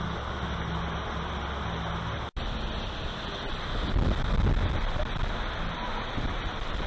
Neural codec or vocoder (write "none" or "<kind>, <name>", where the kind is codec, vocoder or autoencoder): none